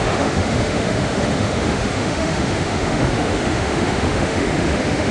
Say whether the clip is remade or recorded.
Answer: remade